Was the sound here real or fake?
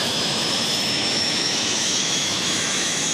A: fake